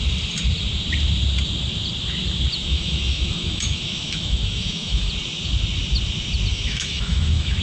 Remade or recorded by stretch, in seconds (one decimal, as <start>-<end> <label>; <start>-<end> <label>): 0.0-2.6 recorded; 2.6-5.1 remade; 5.1-6.5 recorded; 6.5-7.6 remade